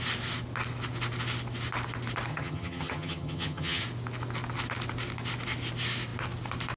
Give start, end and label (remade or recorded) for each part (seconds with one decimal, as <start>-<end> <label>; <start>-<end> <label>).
0.0-2.3 recorded; 2.3-3.8 remade; 3.8-6.8 recorded